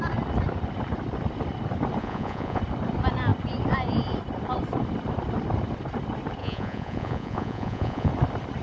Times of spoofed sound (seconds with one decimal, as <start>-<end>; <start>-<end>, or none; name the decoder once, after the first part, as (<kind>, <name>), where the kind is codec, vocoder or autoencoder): 2.0-2.6 (vocoder, Vocos); 6.4-8.1